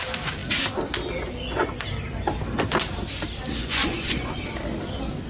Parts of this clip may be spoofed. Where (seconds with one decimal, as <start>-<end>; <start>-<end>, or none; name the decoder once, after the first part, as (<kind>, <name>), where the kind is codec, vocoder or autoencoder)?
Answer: 3.6-4.4 (vocoder, Vocos)